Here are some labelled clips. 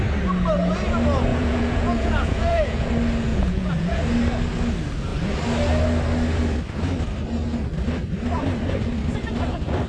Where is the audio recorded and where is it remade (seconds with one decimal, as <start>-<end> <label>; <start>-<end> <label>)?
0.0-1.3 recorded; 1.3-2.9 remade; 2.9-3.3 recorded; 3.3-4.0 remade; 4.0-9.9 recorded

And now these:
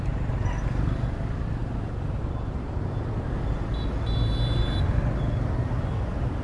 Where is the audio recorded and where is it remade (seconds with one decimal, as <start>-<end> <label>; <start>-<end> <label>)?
0.0-1.6 recorded; 1.6-2.9 remade; 2.9-6.4 recorded

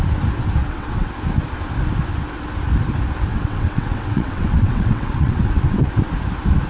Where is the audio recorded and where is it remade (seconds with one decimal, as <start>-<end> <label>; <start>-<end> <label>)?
0.0-0.6 recorded; 0.6-1.1 remade; 1.1-3.3 recorded; 3.3-5.9 remade; 5.9-6.7 recorded

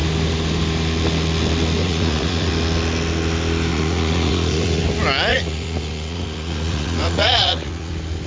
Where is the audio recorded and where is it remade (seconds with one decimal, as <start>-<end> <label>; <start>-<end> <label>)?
0.0-1.8 recorded; 1.8-2.5 remade; 2.5-3.7 recorded; 3.7-4.8 remade; 4.8-5.3 recorded; 5.3-7.9 remade; 7.9-8.3 recorded

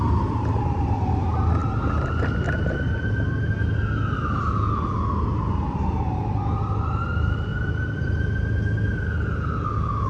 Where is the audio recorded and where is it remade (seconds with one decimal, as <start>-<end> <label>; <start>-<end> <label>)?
0.0-10.1 recorded

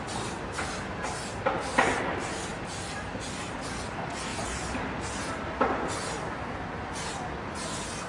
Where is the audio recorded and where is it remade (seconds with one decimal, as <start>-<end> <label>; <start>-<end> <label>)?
0.0-8.1 recorded

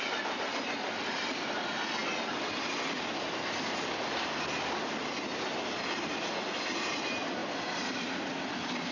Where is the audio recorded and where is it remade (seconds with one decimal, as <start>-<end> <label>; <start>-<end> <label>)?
0.0-8.9 recorded

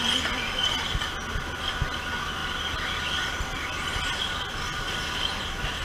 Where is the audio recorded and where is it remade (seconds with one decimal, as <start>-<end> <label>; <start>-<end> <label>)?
0.0-5.8 recorded